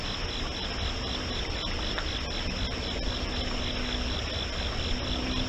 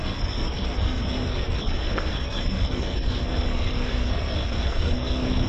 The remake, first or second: second